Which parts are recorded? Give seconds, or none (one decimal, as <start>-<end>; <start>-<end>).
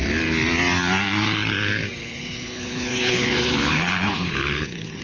0.0-2.0